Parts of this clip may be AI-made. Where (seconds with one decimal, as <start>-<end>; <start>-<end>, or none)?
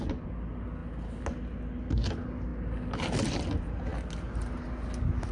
none